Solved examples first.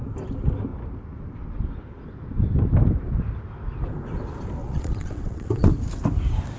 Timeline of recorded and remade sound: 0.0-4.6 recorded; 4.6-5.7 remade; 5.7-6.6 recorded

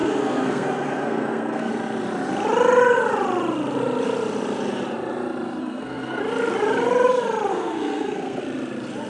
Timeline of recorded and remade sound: 0.0-1.7 remade; 1.7-5.6 recorded; 5.6-6.2 remade; 6.2-7.5 recorded; 7.5-8.4 remade; 8.4-9.1 recorded

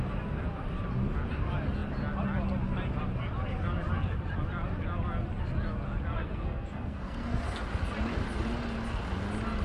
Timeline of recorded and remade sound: 0.0-6.2 recorded; 6.2-7.4 remade; 7.4-9.6 recorded